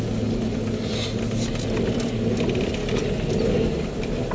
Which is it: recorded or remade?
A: recorded